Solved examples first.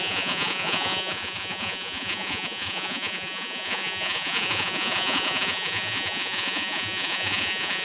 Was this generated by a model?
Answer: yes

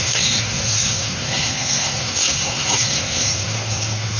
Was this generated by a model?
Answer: yes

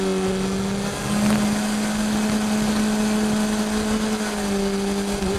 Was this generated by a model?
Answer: no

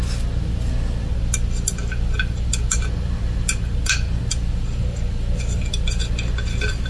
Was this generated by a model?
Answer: no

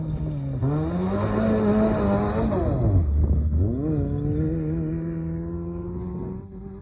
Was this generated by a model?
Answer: no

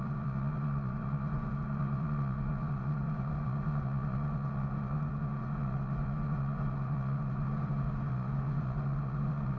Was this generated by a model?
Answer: yes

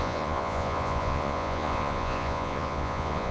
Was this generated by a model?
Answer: yes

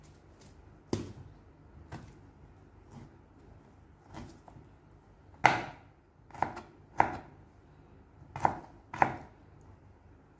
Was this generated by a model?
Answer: no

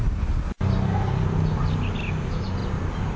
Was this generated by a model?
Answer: no